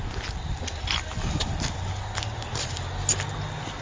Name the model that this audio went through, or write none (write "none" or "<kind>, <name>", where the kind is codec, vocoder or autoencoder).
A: none